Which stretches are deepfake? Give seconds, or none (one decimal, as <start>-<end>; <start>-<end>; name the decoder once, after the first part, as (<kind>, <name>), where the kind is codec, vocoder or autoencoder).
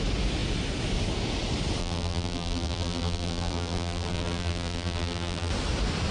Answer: 1.8-5.5 (vocoder, BigVGAN v2)